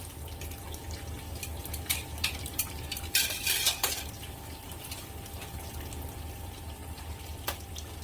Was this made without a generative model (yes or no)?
no